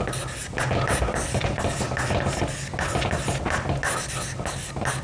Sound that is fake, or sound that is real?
real